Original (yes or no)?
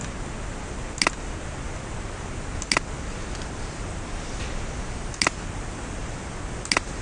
yes